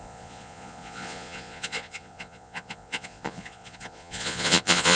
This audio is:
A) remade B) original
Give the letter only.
A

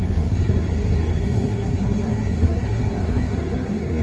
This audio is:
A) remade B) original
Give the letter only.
A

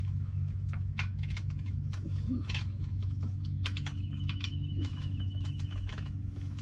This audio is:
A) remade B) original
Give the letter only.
A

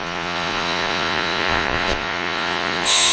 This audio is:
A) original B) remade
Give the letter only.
B